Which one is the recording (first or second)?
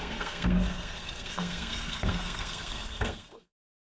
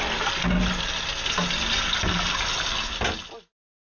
second